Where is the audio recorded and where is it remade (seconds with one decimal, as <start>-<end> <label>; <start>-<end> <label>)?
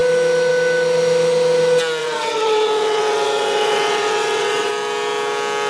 0.0-2.0 recorded; 2.0-4.7 remade; 4.7-5.7 recorded